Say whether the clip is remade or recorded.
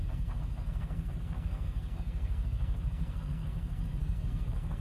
remade